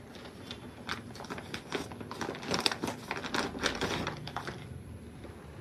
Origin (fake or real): real